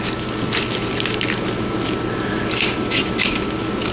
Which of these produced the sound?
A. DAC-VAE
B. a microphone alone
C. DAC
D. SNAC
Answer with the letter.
B